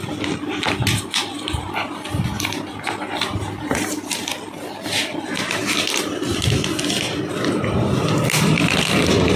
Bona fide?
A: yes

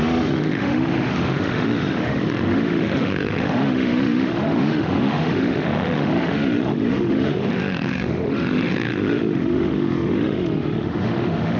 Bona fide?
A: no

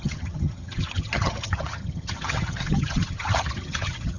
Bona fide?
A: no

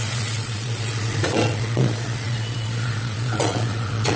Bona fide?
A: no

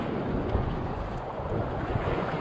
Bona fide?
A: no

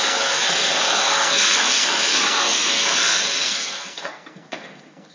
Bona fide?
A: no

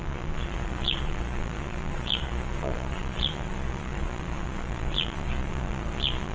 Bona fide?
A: no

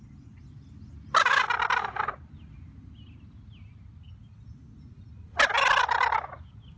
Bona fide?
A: yes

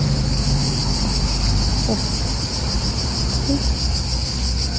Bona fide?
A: yes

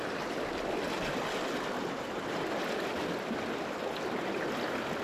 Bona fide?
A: yes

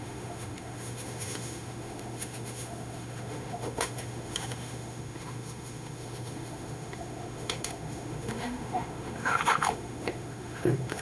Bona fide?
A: no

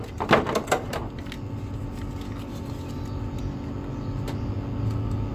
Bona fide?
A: yes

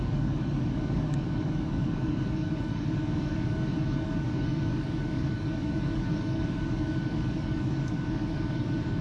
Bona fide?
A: no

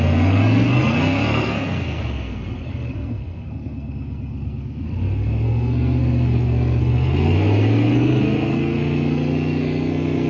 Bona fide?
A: no